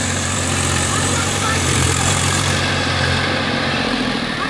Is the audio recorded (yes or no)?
no